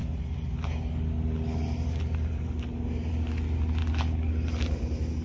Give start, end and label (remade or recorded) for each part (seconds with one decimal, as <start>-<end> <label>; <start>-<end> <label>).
0.0-5.2 recorded